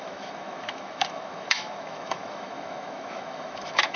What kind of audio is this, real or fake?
fake